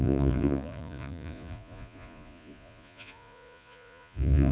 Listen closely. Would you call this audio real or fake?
fake